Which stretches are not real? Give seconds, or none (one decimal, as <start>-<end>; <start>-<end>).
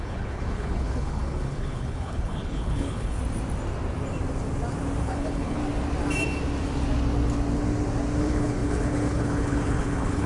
0.0-3.2; 5.0-5.6; 8.2-10.3